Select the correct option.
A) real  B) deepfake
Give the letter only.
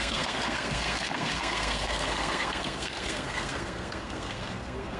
B